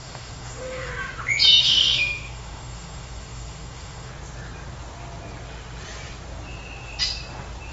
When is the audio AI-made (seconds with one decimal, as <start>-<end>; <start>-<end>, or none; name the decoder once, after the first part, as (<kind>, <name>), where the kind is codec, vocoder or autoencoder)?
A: 0.0-0.9 (autoencoder, DAC-VAE); 1.6-4.1